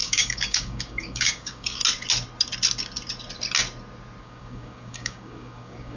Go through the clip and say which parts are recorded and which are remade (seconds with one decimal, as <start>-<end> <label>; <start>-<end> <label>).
0.0-1.8 remade; 1.8-4.2 recorded; 4.2-6.0 remade